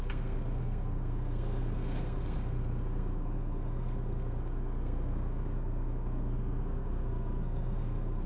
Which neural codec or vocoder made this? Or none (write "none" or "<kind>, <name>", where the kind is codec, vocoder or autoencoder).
codec, SNAC